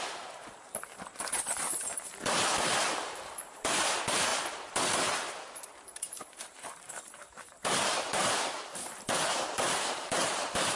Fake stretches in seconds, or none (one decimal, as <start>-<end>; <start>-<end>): 0.0-4.3; 5.6-10.8

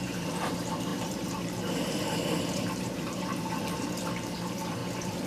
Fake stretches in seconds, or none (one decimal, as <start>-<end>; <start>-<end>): 0.0-4.8